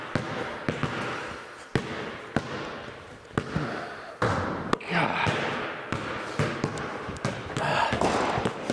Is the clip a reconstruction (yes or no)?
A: no